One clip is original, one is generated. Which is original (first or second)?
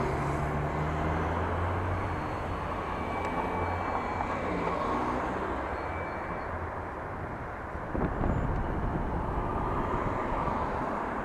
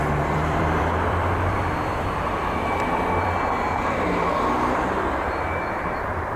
first